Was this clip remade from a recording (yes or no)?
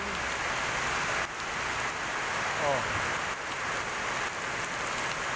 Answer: no